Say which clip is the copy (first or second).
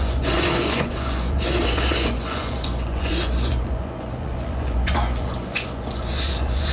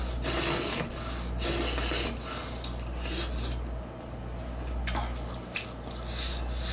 first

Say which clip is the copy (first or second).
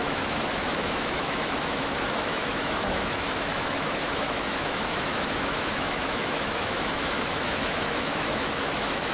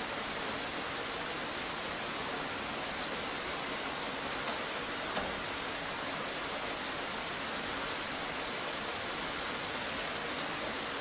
first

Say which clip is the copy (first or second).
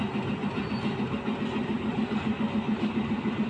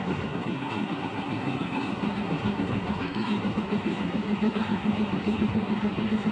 second